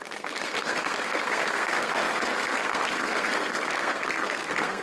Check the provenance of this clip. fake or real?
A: fake